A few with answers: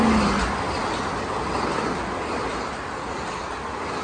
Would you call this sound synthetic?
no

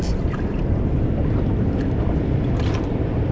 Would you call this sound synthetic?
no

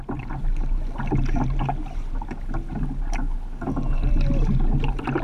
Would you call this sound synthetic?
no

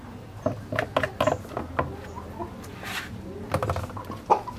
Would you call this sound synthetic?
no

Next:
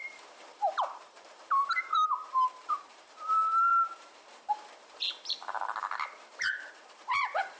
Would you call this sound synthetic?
yes